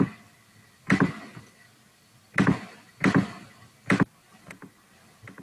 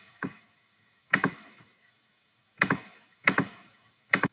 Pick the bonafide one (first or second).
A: first